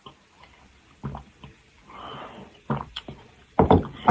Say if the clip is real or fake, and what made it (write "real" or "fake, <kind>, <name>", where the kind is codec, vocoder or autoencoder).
real